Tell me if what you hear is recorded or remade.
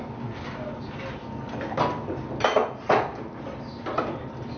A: recorded